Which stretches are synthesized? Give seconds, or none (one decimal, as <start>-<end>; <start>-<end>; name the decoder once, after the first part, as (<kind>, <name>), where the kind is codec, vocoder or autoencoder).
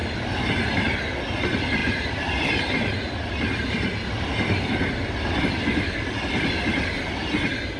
none